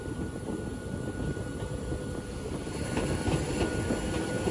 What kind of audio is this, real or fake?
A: real